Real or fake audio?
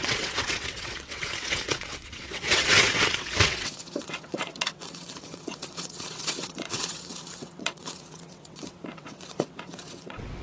fake